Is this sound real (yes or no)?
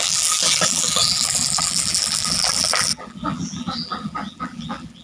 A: no